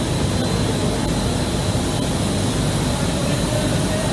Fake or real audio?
real